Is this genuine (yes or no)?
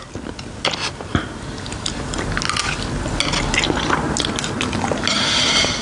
yes